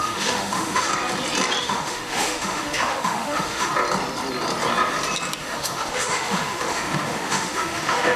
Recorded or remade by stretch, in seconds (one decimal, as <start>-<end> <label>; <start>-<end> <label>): 0.0-0.9 remade; 0.9-1.6 recorded; 1.6-3.7 remade; 3.7-5.4 recorded; 5.4-8.2 remade